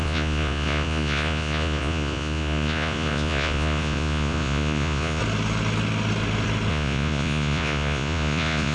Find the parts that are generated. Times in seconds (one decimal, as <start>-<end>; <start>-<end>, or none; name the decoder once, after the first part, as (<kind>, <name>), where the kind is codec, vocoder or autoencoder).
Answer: 0.0-5.2 (vocoder, Vocos); 6.7-8.7